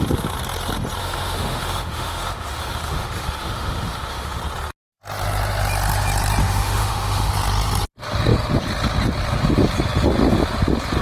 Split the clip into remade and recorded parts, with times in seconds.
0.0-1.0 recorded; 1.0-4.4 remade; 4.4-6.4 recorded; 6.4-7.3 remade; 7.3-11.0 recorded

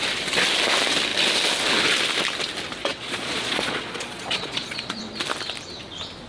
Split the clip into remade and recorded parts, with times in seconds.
0.0-2.8 recorded; 2.8-5.0 remade; 5.0-6.3 recorded

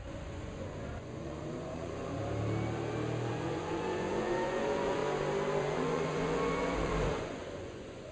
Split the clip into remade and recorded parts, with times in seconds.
0.0-2.2 remade; 2.2-3.3 recorded; 3.3-5.0 remade; 5.0-5.6 recorded; 5.6-8.1 remade

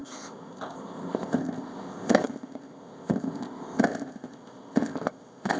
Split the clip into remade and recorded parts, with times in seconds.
0.0-5.6 remade

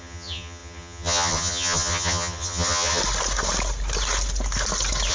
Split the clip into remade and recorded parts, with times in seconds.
0.0-3.0 remade; 3.0-5.1 recorded